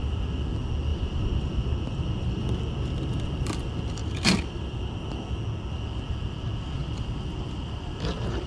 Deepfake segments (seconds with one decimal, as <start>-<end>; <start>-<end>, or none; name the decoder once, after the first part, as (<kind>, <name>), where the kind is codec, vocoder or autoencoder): 0.9-2.6 (vocoder, BigVGAN v2); 4.0-4.7; 6.8-8.5